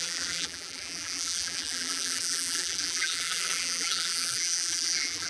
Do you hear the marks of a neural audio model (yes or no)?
yes